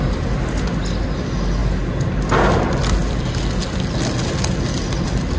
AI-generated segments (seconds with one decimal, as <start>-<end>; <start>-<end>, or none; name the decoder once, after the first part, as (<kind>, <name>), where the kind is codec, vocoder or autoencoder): none